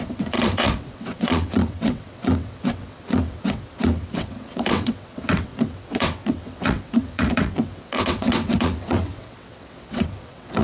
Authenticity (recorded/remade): remade